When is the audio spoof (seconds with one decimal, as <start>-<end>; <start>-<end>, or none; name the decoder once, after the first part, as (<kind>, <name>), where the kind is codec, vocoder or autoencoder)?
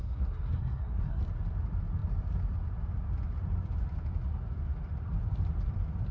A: 0.0-1.2 (codec, SNAC)